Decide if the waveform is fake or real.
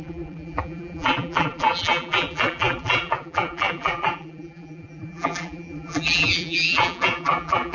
fake